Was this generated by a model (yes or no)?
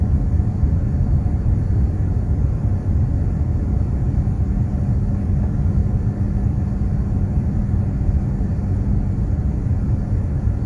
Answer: no